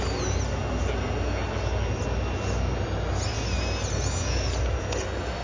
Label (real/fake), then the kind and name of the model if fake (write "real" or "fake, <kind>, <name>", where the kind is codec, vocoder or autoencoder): real